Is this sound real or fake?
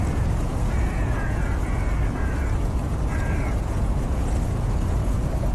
fake